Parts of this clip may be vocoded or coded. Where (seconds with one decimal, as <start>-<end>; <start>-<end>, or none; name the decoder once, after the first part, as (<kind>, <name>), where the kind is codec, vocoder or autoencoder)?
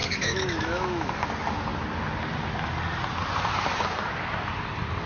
0.0-1.1 (autoencoder, DAC-VAE)